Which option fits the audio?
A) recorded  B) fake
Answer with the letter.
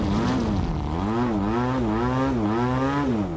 A